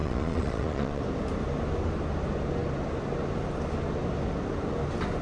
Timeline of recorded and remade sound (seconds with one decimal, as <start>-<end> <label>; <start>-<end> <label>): 0.0-1.0 remade; 1.0-5.2 recorded